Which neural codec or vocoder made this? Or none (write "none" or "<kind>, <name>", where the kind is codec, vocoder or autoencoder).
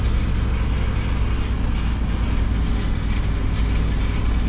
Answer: none